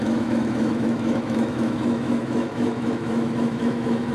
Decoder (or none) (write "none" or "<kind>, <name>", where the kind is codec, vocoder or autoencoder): autoencoder, DAC-VAE